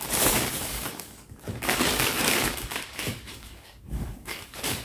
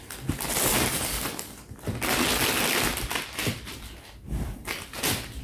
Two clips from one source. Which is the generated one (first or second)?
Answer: first